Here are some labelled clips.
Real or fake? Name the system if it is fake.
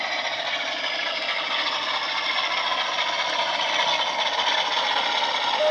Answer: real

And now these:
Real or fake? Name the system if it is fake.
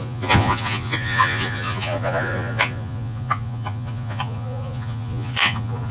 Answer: fake, vocoder, Vocos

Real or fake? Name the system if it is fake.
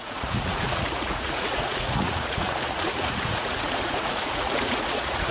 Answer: fake, vocoder, Vocos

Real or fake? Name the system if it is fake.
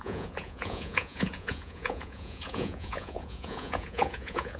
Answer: fake, vocoder, Vocos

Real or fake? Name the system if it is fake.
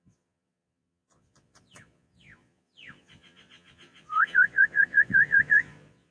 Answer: fake, vocoder, Vocos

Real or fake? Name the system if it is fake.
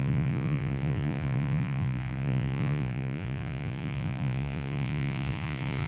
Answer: fake, vocoder, Vocos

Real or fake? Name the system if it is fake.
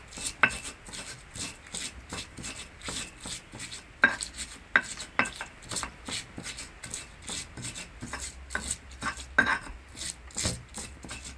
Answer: real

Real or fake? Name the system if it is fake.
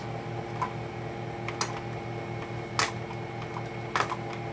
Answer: real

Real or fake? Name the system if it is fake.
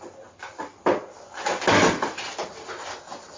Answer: real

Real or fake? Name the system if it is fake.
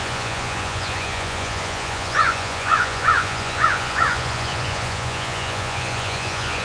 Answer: fake, vocoder, Vocos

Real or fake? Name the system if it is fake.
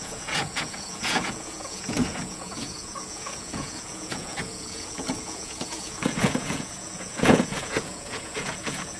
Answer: fake, vocoder, Vocos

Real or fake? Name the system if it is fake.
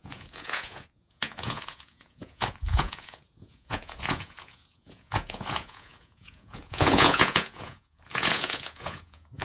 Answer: fake, vocoder, Vocos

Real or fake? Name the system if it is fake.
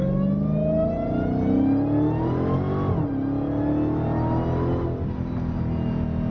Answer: real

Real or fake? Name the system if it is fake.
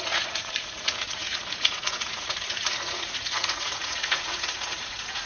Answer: fake, vocoder, Vocos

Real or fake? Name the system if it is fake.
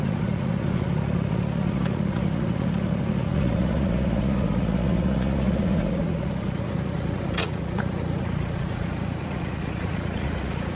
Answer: fake, vocoder, Vocos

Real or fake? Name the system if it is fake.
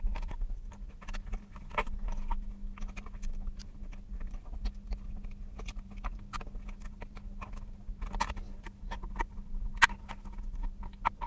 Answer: real